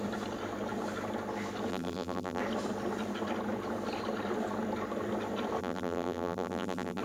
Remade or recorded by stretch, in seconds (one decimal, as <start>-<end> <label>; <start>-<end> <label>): 0.0-1.7 recorded; 1.7-2.4 remade; 2.4-5.6 recorded; 5.6-7.0 remade